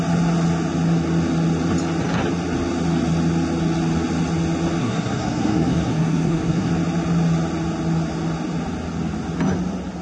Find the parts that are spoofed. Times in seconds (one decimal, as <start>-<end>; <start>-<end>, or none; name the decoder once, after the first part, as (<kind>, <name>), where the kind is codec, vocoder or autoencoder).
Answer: 4.8-6.7 (codec, SNAC)